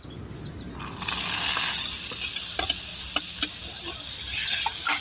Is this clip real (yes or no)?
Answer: yes